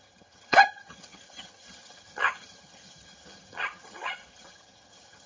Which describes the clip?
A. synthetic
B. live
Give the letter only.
A